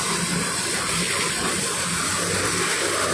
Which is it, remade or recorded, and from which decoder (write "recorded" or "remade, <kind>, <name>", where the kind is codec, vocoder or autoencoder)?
recorded